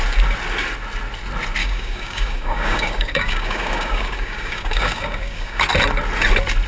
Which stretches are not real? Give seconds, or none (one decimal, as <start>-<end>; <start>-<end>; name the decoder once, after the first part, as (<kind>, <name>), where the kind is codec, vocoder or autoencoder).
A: 1.6-5.6 (codec, DAC)